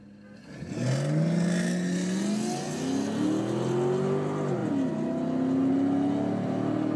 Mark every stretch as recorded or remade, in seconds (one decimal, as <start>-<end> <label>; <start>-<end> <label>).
0.0-7.0 recorded